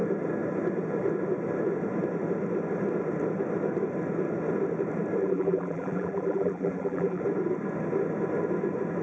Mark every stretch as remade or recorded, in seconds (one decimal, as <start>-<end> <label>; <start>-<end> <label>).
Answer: 0.0-5.2 recorded; 5.2-7.2 remade; 7.2-9.0 recorded